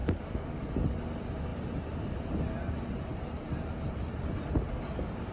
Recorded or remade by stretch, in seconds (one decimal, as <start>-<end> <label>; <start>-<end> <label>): 0.0-0.7 remade; 0.7-5.3 recorded